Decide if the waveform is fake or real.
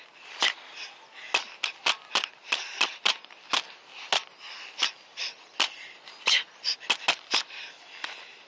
real